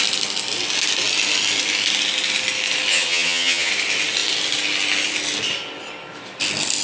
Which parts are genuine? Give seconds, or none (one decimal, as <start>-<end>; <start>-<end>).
0.0-2.9; 3.7-6.8